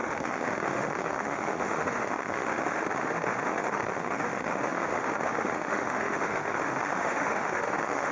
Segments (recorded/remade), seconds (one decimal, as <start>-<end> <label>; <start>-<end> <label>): 0.0-8.1 remade